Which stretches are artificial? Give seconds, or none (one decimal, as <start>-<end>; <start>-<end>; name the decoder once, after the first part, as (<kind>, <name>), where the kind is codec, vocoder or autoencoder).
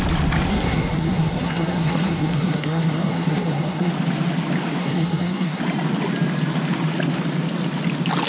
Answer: 0.5-3.9 (codec, SNAC); 4.8-5.6